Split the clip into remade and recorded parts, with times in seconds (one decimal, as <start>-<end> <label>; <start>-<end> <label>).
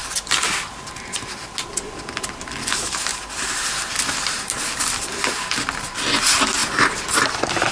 0.0-7.7 recorded